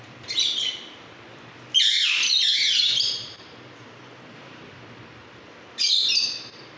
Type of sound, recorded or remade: remade